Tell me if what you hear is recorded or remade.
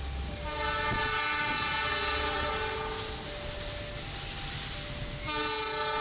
recorded